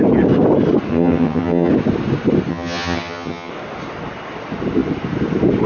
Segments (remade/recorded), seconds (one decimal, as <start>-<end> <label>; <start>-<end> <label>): 0.0-0.9 recorded; 0.9-1.7 remade; 1.7-2.5 recorded; 2.5-3.5 remade; 3.5-5.7 recorded